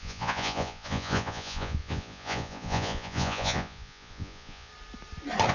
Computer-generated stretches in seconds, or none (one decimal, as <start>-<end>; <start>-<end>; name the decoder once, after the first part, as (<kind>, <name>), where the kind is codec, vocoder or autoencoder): 0.0-4.7 (vocoder, Vocos)